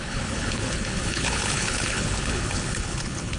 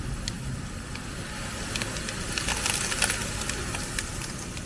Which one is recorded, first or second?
second